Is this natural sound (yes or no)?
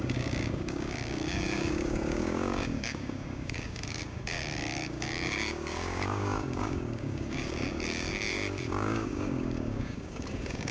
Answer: no